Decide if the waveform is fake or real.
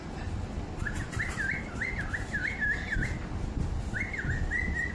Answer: real